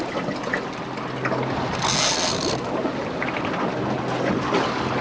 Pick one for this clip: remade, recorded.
recorded